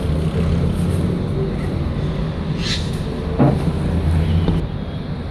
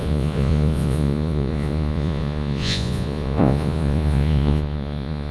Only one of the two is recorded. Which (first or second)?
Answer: first